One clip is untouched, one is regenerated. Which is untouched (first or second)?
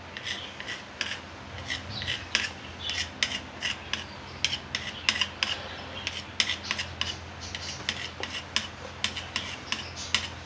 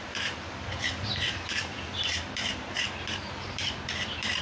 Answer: first